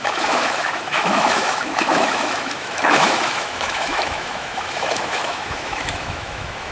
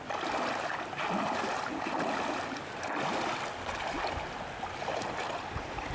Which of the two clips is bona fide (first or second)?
second